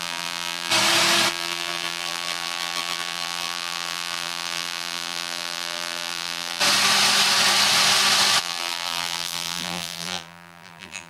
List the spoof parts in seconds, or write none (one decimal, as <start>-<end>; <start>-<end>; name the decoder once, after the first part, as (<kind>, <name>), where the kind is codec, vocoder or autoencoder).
0.0-0.7 (vocoder, BigVGAN v2); 1.3-6.6; 8.4-11.1